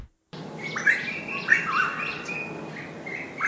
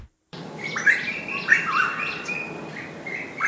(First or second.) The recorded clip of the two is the first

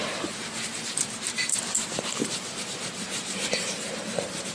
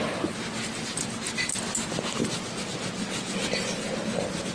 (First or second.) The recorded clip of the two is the second